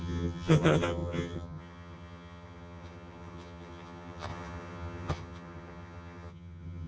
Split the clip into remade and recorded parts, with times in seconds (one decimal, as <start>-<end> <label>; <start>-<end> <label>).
0.0-6.9 remade